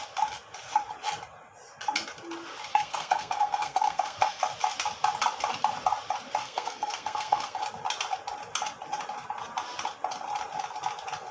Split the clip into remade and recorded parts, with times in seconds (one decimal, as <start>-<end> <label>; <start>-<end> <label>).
0.0-2.7 recorded; 2.7-4.4 remade; 4.4-6.4 recorded; 6.4-7.6 remade; 7.6-11.3 recorded